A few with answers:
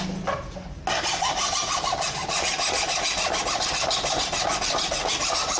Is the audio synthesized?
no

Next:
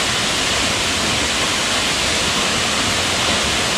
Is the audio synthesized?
no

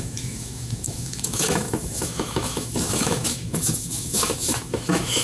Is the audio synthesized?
yes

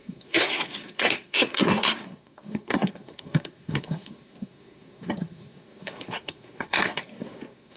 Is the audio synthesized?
yes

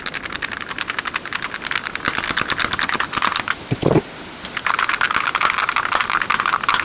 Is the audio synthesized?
no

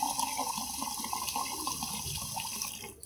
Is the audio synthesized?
no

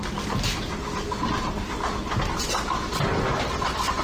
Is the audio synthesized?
no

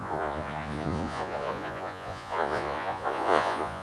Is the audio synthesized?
yes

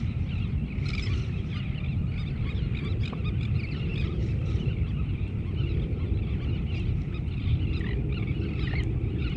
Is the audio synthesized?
yes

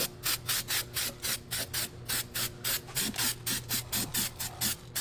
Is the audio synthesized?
no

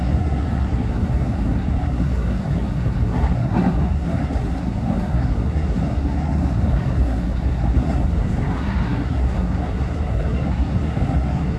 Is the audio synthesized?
yes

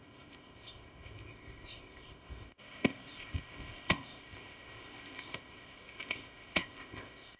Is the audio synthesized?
yes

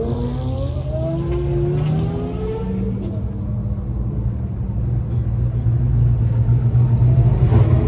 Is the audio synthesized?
no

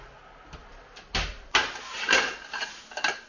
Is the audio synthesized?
no